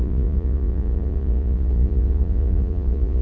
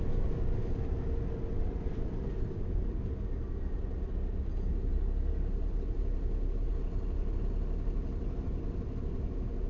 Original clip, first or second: second